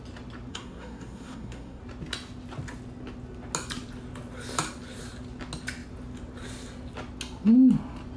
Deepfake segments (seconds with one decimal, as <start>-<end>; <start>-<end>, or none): 0.5-1.8